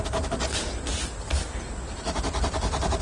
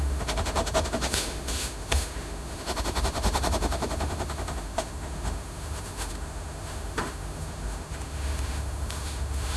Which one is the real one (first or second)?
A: first